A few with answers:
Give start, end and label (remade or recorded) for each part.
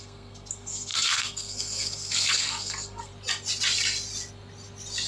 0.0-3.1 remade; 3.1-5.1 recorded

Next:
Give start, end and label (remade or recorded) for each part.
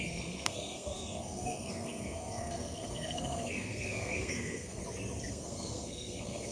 0.0-4.8 remade; 4.8-5.3 recorded; 5.3-6.5 remade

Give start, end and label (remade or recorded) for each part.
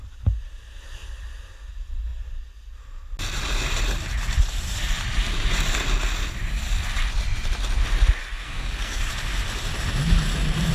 0.0-8.2 recorded; 8.2-9.1 remade; 9.1-10.7 recorded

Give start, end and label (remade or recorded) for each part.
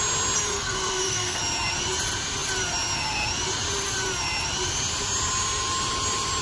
0.0-0.5 recorded; 0.5-1.4 remade; 1.4-6.4 recorded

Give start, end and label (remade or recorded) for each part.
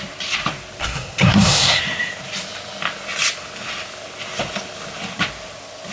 0.0-0.8 recorded; 0.8-1.8 remade; 1.8-5.9 recorded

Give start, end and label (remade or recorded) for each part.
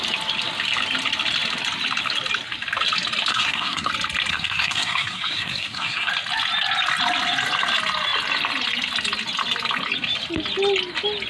0.0-3.3 recorded; 3.3-3.9 remade; 3.9-4.3 recorded; 4.3-6.1 remade; 6.1-11.3 recorded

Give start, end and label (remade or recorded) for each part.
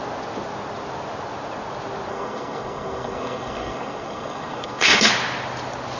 0.0-2.1 recorded; 2.1-5.1 remade; 5.1-6.0 recorded